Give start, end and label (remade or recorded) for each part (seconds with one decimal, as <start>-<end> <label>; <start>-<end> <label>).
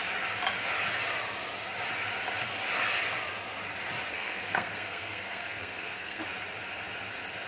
0.0-4.1 recorded; 4.1-6.2 remade; 6.2-7.5 recorded